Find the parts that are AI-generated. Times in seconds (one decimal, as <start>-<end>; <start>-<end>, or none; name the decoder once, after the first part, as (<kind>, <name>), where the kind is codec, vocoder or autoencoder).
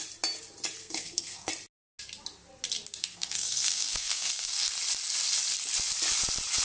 0.8-1.5 (codec, SNAC); 3.0-4.7